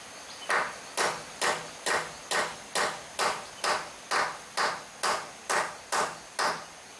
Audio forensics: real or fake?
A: real